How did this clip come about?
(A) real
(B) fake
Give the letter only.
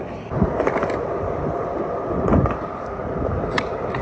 A